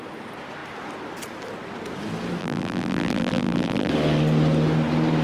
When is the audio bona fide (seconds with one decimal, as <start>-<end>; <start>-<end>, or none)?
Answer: 0.0-2.4; 3.9-5.2

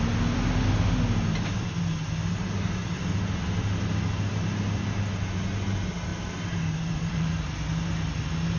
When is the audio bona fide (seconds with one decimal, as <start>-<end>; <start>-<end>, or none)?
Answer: 0.0-6.1; 7.5-8.6